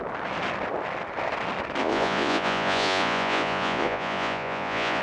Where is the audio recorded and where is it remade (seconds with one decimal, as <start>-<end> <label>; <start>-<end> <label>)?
0.0-1.8 recorded; 1.8-5.0 remade